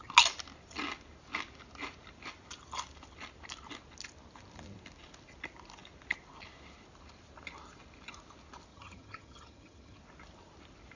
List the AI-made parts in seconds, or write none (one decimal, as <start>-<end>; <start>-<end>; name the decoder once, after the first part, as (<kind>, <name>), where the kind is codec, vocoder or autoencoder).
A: 8.7-10.0 (vocoder, HiFi-GAN)